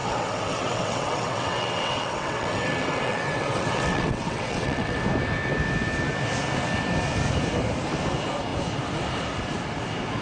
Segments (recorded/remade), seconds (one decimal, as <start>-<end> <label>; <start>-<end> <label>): 0.0-5.0 remade; 5.0-10.2 recorded